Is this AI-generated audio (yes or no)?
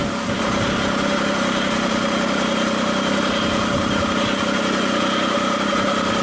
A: no